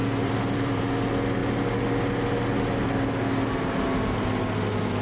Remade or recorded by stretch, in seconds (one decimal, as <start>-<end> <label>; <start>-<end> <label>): 0.0-0.8 remade; 0.8-5.0 recorded